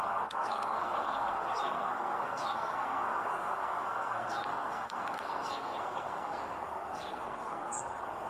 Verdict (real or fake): fake